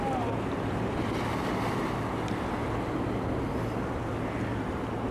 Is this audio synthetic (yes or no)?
no